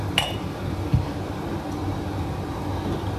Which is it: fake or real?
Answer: real